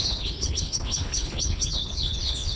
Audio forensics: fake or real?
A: fake